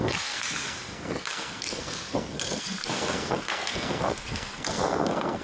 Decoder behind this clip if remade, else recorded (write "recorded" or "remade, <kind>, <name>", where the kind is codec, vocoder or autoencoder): remade, codec, SNAC